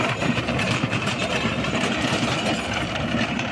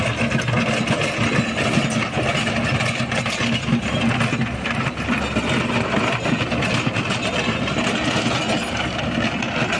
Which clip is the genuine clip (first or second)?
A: second